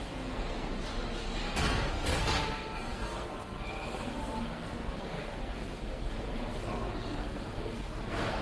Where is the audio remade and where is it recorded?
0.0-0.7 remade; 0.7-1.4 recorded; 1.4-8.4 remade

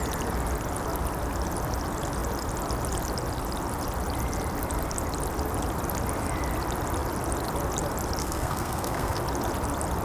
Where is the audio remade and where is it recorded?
0.0-8.2 recorded; 8.2-9.2 remade; 9.2-10.0 recorded

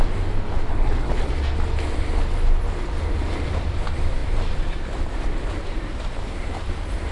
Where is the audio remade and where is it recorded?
0.0-0.7 recorded; 0.7-1.3 remade; 1.3-7.1 recorded

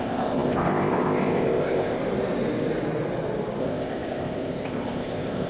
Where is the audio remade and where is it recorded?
0.0-2.0 remade; 2.0-3.6 recorded; 3.6-5.5 remade

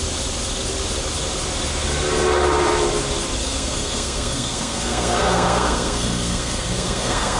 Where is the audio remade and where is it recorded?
0.0-3.4 recorded; 3.4-7.4 remade

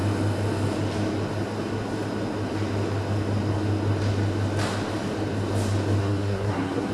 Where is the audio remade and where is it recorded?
0.0-6.0 recorded; 6.0-6.9 remade